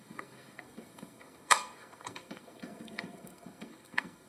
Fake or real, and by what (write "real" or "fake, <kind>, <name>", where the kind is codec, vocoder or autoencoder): fake, codec, SNAC